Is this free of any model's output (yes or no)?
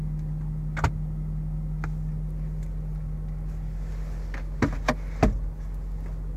yes